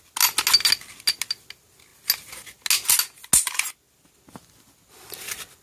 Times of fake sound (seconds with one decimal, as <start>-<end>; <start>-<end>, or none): none